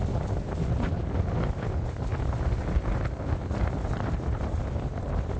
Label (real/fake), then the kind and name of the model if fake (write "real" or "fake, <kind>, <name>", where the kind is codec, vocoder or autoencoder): real